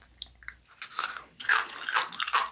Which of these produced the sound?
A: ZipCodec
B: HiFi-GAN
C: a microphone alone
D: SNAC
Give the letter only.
C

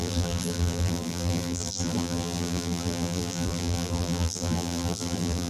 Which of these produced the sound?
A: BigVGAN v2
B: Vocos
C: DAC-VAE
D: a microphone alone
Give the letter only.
A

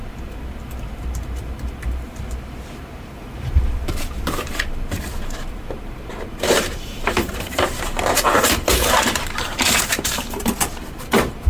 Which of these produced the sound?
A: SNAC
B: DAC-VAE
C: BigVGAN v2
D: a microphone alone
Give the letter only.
C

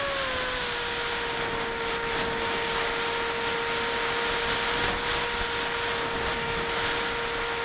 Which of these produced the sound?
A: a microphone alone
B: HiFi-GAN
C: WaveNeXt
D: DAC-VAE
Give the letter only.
A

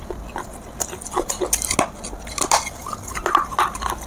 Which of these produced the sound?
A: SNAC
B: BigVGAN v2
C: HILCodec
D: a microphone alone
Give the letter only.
D